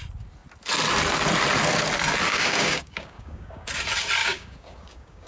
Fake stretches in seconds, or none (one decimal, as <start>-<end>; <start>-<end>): 2.3-3.7; 4.2-5.3